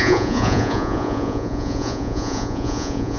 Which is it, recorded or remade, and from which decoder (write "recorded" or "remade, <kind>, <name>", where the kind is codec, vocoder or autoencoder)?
remade, vocoder, Vocos